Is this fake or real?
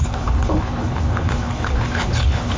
fake